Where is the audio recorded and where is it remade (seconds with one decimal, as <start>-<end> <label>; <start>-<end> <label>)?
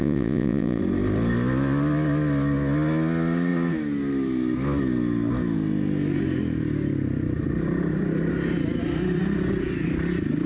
0.0-0.8 remade; 0.8-10.5 recorded